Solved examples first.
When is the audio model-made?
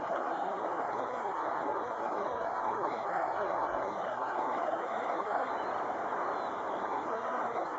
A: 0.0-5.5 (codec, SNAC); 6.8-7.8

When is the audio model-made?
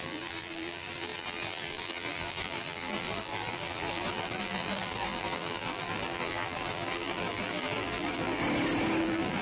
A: 0.0-8.4 (vocoder, BigVGAN v2); 9.0-9.4